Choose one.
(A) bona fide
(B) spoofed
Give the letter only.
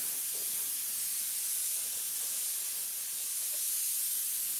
A